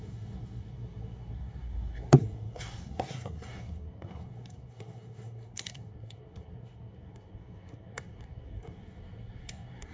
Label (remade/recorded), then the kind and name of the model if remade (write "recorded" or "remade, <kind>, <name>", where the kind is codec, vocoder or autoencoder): remade, codec, SNAC